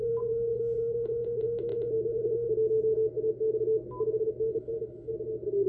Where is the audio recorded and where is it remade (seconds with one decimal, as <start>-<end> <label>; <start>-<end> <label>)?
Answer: 0.0-4.5 recorded; 4.5-5.1 remade; 5.1-5.7 recorded